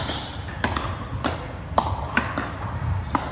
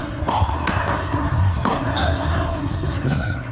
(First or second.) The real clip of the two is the first